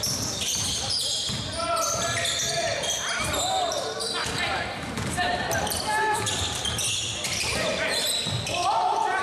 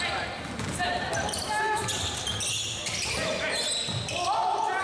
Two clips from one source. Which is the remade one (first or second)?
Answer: first